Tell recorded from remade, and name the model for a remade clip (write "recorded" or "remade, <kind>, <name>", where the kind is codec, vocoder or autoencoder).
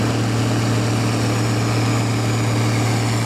recorded